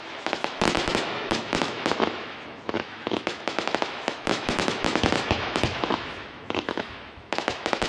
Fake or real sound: fake